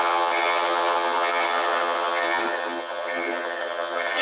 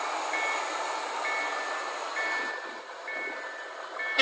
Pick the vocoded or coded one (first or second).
first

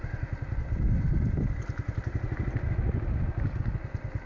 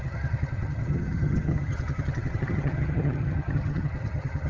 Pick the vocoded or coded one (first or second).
second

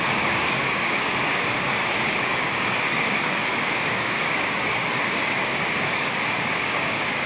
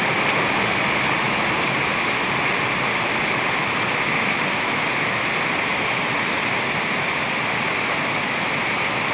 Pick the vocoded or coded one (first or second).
first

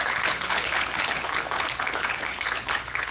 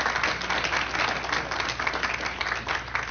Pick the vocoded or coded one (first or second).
first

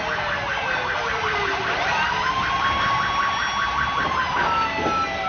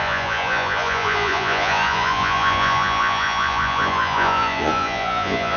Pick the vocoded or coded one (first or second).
second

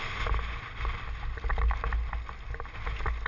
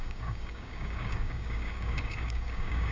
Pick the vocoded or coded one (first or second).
second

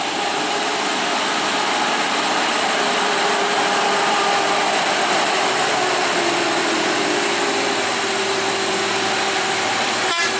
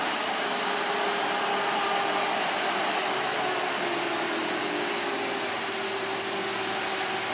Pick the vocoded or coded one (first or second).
first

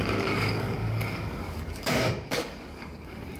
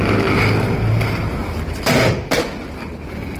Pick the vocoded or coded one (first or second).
first